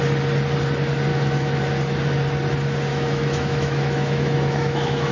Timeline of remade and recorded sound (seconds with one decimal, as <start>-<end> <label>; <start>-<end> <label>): 0.0-1.1 recorded; 1.1-1.6 remade; 1.6-2.9 recorded; 2.9-5.1 remade